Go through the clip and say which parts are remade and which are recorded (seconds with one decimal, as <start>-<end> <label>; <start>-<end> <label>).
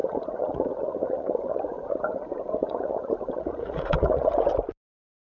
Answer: 0.0-2.0 remade; 2.0-2.6 recorded; 2.6-4.4 remade; 4.4-5.3 recorded